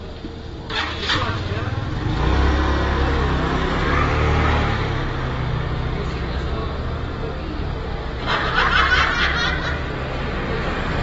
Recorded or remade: recorded